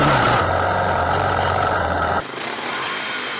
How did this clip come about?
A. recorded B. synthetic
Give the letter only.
B